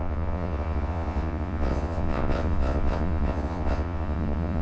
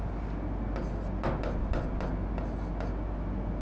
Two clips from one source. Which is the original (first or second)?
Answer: second